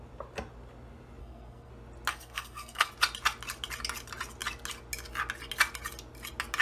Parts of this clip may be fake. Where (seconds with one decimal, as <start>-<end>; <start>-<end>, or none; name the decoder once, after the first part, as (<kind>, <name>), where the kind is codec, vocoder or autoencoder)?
1.2-1.7 (codec, SNAC); 2.1-2.9